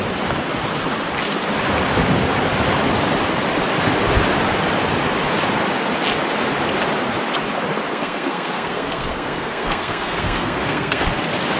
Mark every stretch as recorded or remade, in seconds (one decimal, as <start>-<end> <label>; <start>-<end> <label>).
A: 0.0-7.9 recorded; 7.9-11.1 remade; 11.1-11.6 recorded